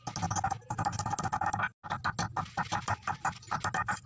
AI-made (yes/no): no